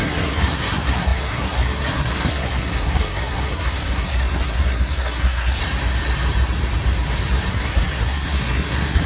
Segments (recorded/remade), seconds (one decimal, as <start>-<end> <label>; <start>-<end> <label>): 0.0-5.6 remade; 5.6-7.5 recorded; 7.5-9.1 remade